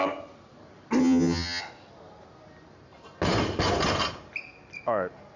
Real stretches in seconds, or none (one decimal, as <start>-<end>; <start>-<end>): 0.0-1.0; 1.6-5.4